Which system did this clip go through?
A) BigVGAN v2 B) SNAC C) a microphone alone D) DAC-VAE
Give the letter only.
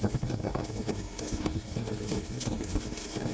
B